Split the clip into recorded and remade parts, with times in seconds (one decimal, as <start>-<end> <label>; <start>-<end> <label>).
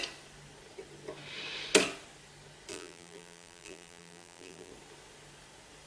0.0-2.7 recorded; 2.7-4.7 remade; 4.7-5.9 recorded